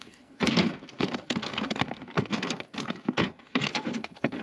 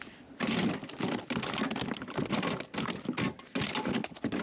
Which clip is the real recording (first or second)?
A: second